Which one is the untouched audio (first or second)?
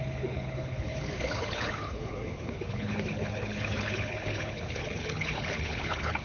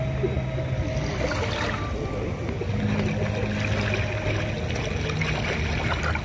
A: second